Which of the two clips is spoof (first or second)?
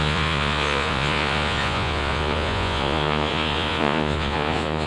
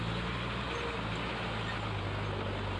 first